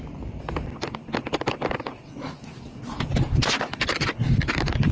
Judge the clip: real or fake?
real